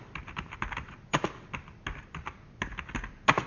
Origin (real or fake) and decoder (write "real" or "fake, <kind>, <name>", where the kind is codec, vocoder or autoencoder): real